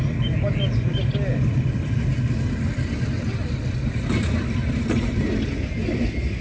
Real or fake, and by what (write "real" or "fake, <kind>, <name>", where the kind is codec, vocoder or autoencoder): real